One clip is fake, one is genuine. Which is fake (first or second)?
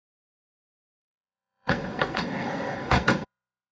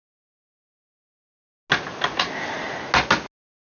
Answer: first